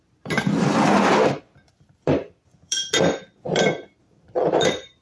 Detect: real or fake fake